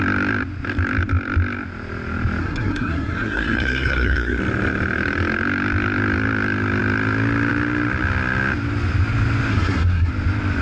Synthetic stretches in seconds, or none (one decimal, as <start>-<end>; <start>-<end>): 2.4-4.4; 9.5-10.1